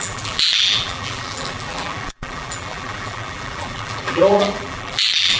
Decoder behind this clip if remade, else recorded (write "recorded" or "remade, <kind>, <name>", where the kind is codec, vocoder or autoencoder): remade, vocoder, BigVGAN v2